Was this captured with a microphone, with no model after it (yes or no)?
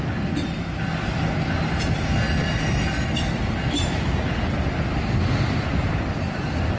yes